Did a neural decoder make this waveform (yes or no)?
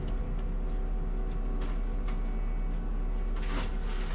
no